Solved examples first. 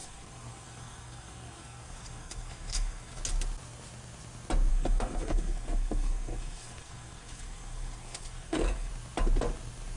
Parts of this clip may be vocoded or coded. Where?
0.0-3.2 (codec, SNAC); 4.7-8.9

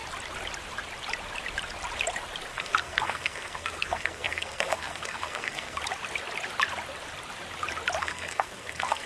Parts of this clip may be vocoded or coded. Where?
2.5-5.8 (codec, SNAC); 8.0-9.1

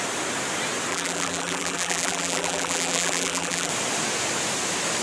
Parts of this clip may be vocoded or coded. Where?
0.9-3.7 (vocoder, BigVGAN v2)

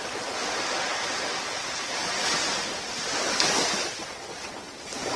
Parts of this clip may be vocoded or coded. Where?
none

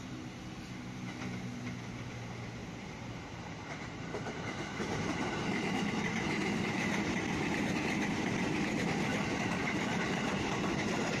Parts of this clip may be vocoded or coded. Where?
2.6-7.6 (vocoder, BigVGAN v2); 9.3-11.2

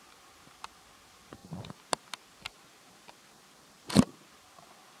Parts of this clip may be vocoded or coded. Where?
none